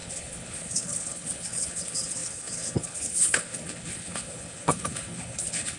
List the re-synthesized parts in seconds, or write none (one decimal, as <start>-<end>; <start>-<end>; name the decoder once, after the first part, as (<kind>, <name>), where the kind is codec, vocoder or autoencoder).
0.0-5.8 (codec, HILCodec)